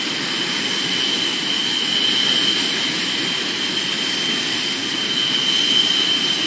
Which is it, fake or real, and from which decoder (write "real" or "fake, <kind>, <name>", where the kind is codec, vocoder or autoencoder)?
real